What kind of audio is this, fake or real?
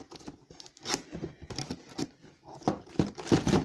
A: real